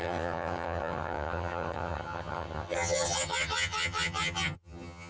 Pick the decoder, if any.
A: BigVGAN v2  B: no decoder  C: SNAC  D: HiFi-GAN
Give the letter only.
D